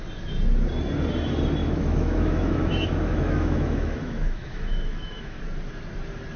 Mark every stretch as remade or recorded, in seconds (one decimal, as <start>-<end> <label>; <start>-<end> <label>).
0.0-1.6 recorded; 1.6-5.4 remade; 5.4-6.4 recorded